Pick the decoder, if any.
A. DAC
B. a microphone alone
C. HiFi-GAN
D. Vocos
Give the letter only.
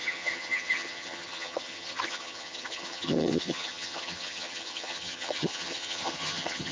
C